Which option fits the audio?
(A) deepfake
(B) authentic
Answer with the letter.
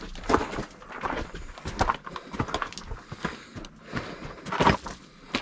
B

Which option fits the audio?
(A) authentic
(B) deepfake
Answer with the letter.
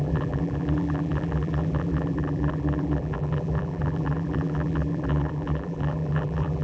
B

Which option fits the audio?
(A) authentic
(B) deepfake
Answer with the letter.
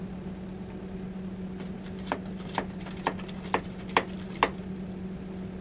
A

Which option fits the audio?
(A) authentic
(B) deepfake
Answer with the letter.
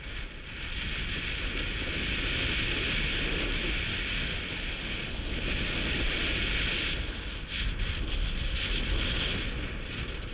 A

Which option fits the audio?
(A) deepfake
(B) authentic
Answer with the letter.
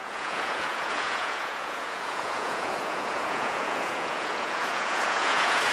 A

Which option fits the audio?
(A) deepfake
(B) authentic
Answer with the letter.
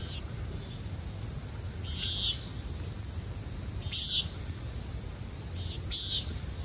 B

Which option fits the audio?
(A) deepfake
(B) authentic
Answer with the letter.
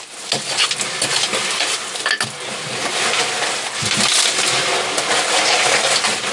B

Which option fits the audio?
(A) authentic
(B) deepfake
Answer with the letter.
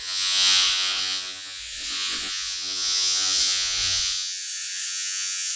B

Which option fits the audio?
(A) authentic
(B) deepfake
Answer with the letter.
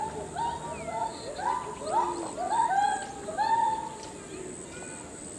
A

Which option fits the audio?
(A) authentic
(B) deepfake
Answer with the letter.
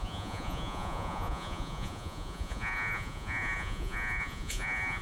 B